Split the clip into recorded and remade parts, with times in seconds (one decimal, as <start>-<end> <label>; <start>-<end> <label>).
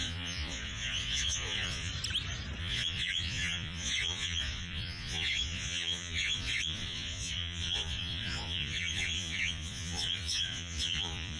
0.0-1.9 remade; 1.9-2.6 recorded; 2.6-11.4 remade